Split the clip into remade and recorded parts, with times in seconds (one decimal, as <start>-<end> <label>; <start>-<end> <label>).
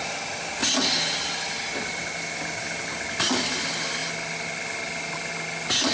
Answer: 0.0-5.9 recorded